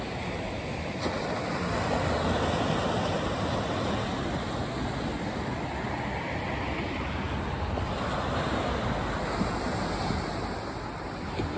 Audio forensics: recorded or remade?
recorded